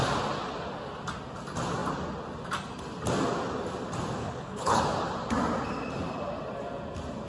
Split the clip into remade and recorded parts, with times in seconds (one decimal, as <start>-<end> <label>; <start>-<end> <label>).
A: 0.0-4.2 recorded; 4.2-4.8 remade; 4.8-7.3 recorded